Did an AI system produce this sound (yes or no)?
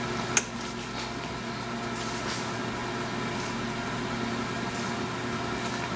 no